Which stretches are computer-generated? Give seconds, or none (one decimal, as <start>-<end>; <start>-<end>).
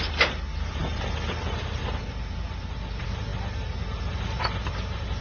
none